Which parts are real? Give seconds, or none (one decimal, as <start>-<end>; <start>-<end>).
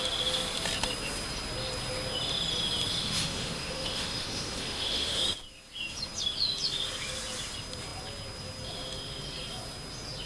0.0-3.0; 5.2-10.3